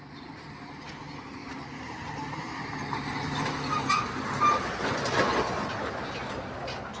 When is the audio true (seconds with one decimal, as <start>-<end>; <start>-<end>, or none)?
0.0-7.0

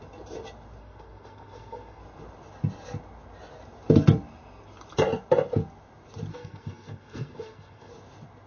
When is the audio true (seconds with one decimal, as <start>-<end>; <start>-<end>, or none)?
0.0-0.8; 2.0-6.3; 7.9-8.5

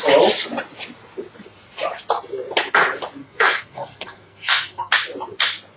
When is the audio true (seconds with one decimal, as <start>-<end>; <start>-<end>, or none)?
0.0-3.2; 4.9-5.8